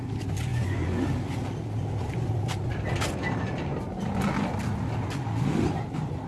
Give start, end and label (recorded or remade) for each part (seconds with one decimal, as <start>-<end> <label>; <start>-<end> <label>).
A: 0.0-0.5 recorded; 0.5-1.0 remade; 1.0-6.3 recorded